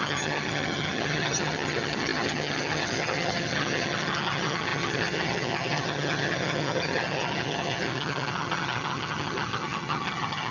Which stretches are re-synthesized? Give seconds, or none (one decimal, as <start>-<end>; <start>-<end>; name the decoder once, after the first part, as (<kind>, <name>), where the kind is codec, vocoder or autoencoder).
0.0-10.5 (vocoder, HiFi-GAN)